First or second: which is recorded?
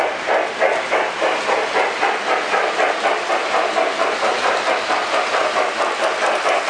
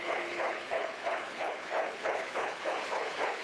first